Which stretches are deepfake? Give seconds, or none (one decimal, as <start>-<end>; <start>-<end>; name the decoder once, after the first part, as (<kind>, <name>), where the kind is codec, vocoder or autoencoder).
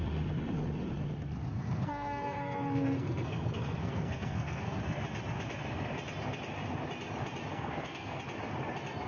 1.5-4.8 (codec, SNAC); 7.5-8.2